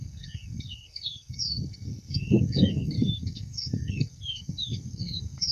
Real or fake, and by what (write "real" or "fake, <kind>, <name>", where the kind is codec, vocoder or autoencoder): fake, codec, SNAC